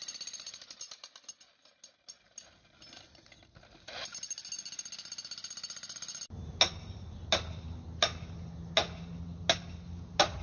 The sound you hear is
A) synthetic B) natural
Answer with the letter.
B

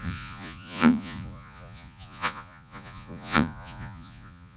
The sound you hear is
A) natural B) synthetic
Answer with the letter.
B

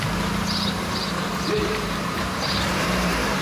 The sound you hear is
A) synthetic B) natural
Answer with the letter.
A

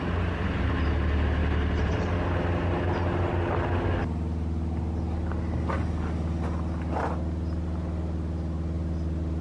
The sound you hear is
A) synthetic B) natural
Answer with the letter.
B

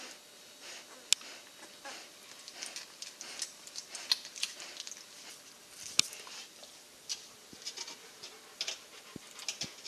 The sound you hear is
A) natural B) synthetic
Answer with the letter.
A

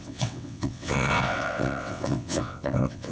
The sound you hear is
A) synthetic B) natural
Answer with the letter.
A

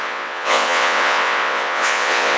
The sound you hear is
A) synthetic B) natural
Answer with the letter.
A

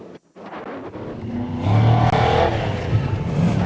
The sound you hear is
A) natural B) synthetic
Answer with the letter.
A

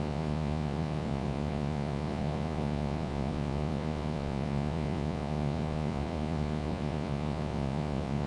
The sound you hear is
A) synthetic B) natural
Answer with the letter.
A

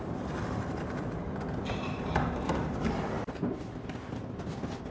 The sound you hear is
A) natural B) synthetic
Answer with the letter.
A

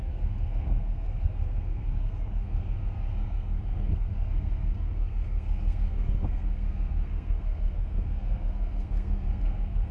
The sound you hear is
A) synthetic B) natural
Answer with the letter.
A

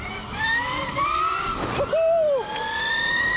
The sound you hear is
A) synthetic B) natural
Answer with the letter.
B